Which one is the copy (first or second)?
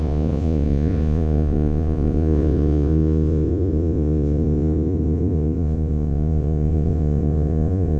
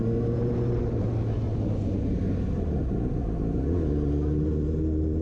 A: first